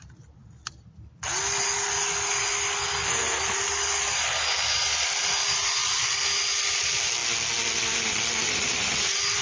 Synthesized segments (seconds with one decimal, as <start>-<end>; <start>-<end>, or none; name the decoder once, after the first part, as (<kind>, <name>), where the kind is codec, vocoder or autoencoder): none